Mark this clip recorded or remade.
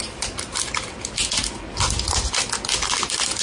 recorded